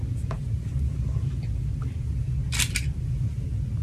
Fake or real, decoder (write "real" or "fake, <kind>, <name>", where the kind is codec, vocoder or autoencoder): real